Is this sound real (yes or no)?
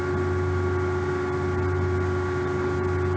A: yes